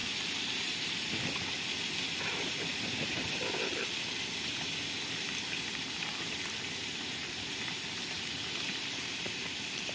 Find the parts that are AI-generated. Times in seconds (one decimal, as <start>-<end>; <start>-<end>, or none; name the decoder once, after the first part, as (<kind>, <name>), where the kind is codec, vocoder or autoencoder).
none